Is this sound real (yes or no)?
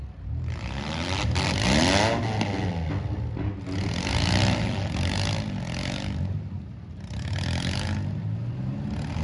yes